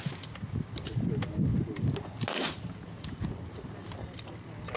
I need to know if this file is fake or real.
real